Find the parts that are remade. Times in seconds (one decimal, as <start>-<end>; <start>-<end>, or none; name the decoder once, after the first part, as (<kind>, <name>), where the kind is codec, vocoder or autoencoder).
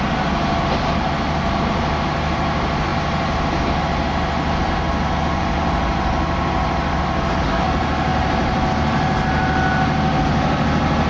none